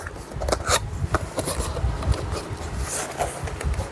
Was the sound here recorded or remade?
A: recorded